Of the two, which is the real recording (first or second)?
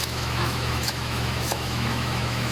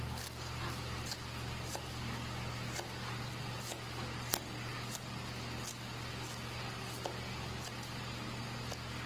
second